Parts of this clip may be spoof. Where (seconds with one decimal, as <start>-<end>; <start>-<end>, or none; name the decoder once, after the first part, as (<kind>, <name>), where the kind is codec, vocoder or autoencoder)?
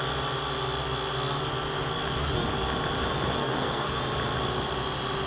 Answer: 3.4-4.0 (codec, SNAC)